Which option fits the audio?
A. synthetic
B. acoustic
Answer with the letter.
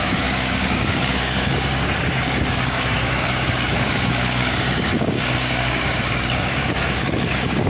A